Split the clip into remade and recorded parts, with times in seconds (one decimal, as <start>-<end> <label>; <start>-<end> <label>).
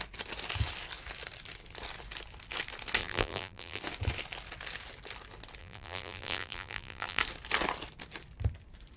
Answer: 0.0-3.0 recorded; 3.0-3.8 remade; 3.8-5.6 recorded; 5.6-7.2 remade; 7.2-9.0 recorded